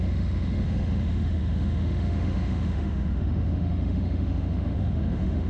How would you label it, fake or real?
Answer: fake